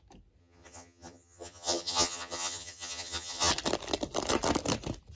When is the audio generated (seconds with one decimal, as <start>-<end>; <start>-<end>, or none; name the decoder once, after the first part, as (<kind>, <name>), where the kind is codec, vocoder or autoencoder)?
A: 0.4-3.5 (vocoder, HiFi-GAN)